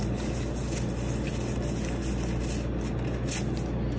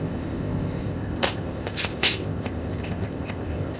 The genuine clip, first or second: first